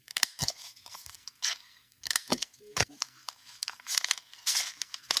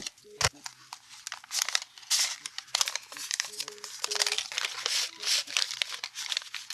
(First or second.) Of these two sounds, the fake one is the first